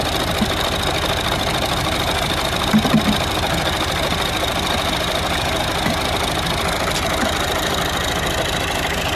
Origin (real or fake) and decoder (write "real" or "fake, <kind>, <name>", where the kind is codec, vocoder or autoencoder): real